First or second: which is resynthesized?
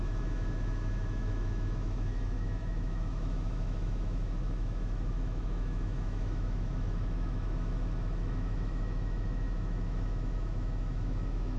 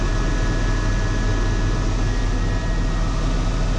first